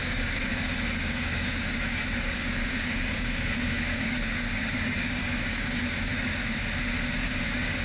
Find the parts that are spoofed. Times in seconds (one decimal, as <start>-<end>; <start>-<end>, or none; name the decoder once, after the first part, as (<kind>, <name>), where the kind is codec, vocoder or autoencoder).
0.0-6.4 (codec, DAC); 7.1-7.8